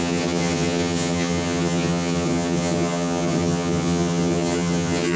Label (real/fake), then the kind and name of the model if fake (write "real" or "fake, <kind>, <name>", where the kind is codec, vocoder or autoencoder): fake, vocoder, HiFi-GAN